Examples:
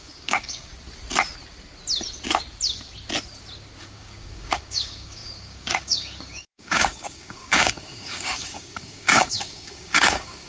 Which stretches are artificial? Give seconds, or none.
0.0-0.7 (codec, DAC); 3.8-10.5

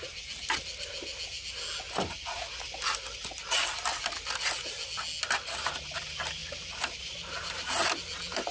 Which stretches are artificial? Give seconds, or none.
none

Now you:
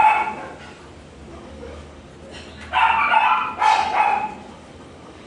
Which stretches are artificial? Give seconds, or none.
1.3-2.1 (codec, DAC); 4.5-5.3

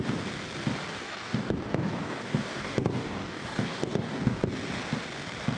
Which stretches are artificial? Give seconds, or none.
1.0-4.4 (codec, DAC)

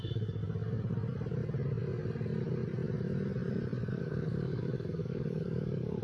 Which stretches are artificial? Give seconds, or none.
0.0-0.4 (codec, DAC); 4.0-6.0